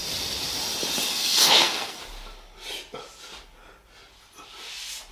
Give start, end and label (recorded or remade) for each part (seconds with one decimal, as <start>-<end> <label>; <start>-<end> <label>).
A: 0.0-1.1 recorded; 1.1-2.0 remade; 2.0-5.1 recorded